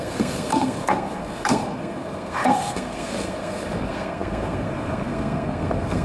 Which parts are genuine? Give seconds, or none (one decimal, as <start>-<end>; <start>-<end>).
none